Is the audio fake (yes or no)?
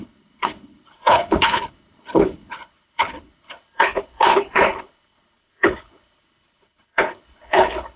yes